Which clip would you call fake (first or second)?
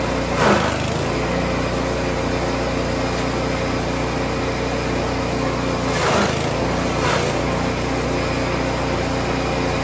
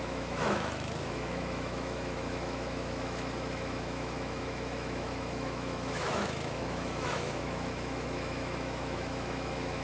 second